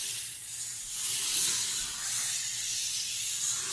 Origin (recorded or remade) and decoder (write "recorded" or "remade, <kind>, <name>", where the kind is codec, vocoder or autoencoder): recorded